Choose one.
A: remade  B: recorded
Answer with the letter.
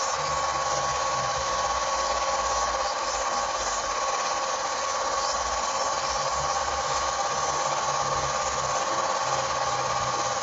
B